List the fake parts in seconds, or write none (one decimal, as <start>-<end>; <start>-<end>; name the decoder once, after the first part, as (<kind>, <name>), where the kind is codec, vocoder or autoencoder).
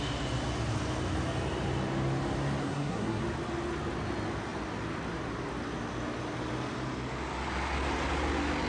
2.6-3.2 (codec, SNAC)